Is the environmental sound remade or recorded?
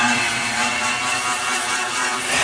remade